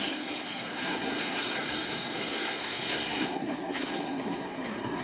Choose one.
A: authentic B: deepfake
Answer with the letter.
B